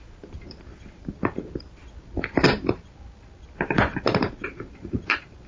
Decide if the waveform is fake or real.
real